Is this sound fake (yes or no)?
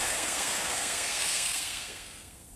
yes